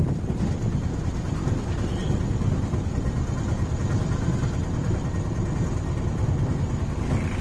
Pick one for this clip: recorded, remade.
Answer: recorded